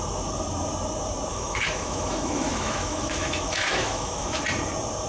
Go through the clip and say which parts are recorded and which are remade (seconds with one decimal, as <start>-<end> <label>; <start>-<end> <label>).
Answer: 0.0-1.3 recorded; 1.3-4.4 remade; 4.4-5.1 recorded